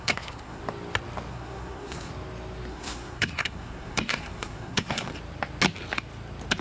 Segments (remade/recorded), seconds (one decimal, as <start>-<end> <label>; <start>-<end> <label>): 0.0-0.6 remade; 0.6-1.3 recorded; 1.3-2.1 remade; 2.1-2.7 recorded; 2.7-5.1 remade; 5.1-6.6 recorded

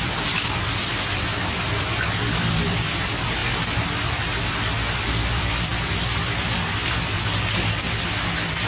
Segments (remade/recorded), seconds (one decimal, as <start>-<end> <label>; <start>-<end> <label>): 0.0-0.9 remade; 0.9-1.6 recorded; 1.6-3.4 remade; 3.4-4.5 recorded; 4.5-5.7 remade; 5.7-6.6 recorded; 6.6-8.7 remade

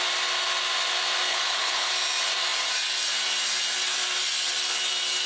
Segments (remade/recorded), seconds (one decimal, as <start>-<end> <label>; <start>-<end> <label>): 0.0-1.3 recorded; 1.3-1.9 remade; 1.9-5.3 recorded

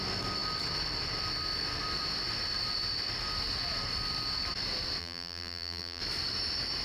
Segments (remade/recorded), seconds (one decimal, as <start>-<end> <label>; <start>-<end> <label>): 0.0-5.0 recorded; 5.0-6.0 remade; 6.0-6.8 recorded

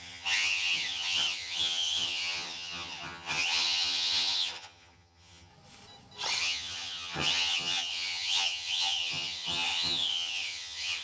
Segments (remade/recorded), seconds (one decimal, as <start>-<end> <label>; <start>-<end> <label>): 0.0-5.5 remade; 5.5-6.4 recorded; 6.4-11.0 remade